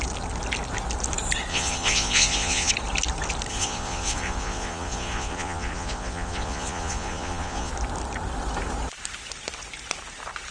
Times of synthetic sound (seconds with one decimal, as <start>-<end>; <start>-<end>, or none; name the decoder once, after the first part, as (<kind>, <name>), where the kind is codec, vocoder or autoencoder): 1.5-2.7 (vocoder, Vocos); 3.5-7.7